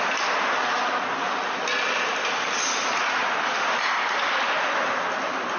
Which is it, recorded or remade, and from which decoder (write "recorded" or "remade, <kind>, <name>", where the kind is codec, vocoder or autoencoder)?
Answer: recorded